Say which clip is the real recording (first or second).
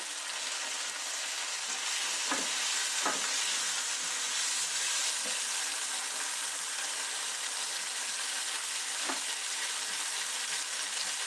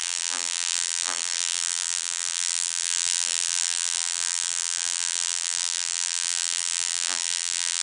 first